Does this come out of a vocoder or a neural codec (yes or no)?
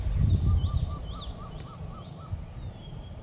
no